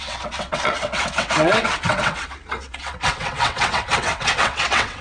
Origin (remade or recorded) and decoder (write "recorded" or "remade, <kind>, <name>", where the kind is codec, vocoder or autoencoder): remade, vocoder, WaveNeXt